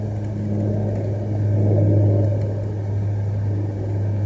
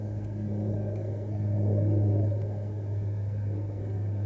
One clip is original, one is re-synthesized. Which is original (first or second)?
first